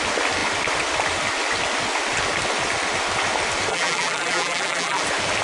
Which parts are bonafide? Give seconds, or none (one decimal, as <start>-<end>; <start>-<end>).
0.0-3.7; 5.0-5.4